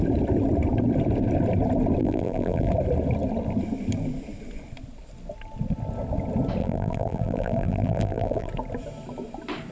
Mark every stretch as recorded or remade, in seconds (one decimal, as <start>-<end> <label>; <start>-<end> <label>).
0.0-2.0 recorded; 2.0-2.7 remade; 2.7-6.6 recorded; 6.6-8.5 remade; 8.5-9.7 recorded